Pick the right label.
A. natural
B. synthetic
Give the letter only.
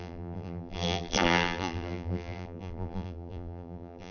B